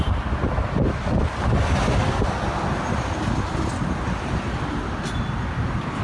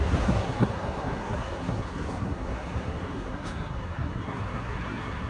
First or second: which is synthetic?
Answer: second